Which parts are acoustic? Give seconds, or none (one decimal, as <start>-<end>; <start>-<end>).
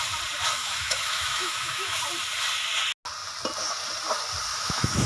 0.0-0.6; 2.0-4.5